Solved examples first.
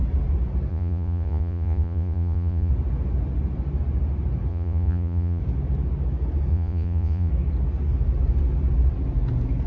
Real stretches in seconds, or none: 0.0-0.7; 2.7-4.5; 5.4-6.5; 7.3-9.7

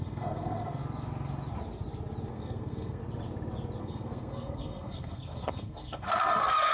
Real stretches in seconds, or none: 0.8-2.3; 3.0-3.8

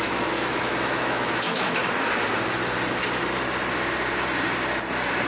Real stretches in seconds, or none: 1.8-5.3

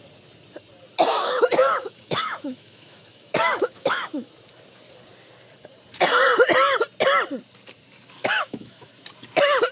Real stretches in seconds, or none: 0.0-1.1; 4.3-8.2; 8.9-9.7

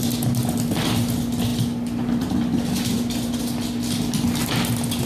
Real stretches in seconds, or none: 0.0-5.1

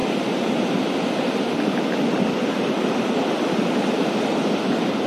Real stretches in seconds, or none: 0.0-5.1